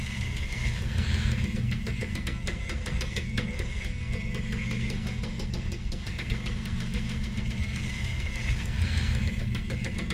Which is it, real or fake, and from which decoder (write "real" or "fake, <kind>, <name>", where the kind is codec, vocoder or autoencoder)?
fake, codec, SNAC